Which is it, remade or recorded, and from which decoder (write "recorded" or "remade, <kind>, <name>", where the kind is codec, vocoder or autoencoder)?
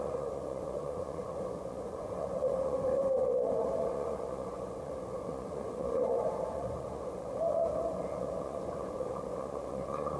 remade, vocoder, Vocos